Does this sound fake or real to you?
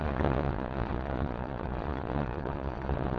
fake